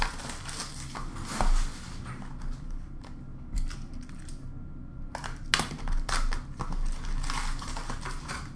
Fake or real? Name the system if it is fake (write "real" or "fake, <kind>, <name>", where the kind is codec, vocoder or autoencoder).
real